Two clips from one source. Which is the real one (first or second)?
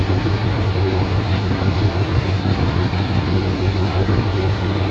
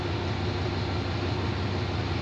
second